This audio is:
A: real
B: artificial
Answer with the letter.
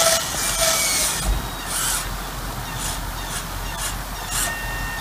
A